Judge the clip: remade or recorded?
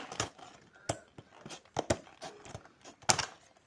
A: recorded